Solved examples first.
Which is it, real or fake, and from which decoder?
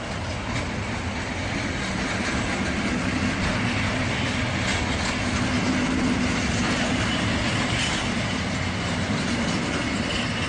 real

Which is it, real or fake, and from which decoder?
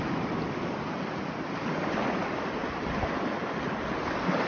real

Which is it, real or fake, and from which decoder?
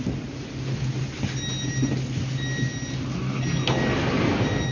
real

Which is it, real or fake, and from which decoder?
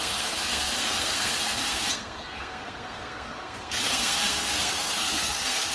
fake, codec, SNAC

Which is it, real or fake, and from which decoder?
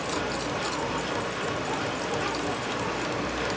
real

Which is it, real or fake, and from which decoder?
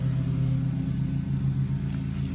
real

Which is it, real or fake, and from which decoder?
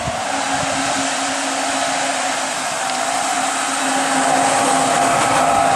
real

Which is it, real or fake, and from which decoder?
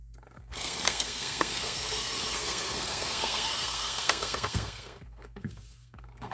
fake, codec, SNAC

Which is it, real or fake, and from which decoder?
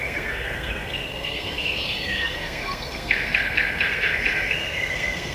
fake, codec, SNAC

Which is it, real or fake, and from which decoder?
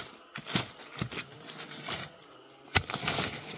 real